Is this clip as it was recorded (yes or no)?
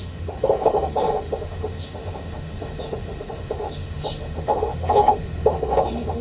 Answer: no